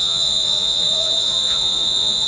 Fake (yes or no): yes